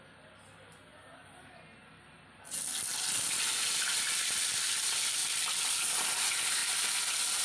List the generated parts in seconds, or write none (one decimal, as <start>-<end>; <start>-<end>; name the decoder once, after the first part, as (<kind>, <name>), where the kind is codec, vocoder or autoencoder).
none